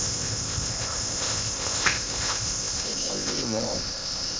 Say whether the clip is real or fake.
fake